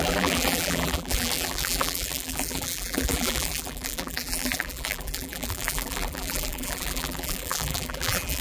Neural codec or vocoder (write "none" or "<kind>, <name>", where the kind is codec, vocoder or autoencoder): vocoder, BigVGAN v2